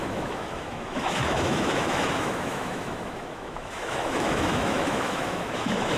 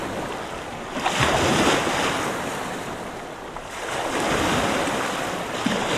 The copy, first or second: first